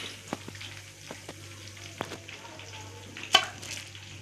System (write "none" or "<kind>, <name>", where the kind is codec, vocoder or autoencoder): none